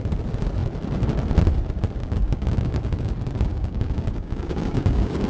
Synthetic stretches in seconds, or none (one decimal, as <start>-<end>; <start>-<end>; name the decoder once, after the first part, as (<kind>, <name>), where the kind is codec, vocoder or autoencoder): 2.0-3.1 (codec, DAC); 3.5-5.3